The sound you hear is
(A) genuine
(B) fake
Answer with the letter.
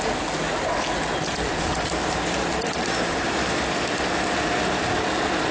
A